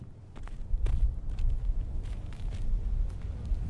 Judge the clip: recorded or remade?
recorded